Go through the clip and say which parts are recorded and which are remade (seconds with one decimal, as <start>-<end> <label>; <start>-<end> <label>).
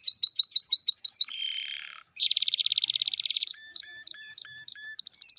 0.0-2.6 remade; 2.6-3.3 recorded; 3.3-5.4 remade